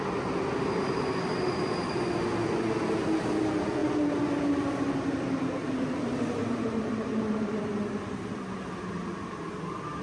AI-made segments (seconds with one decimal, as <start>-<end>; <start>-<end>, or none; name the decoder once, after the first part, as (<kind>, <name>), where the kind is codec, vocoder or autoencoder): 5.6-7.6 (vocoder, BigVGAN v2)